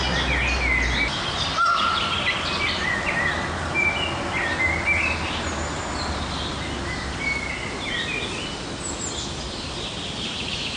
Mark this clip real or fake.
real